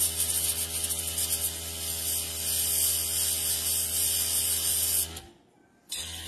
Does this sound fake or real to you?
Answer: real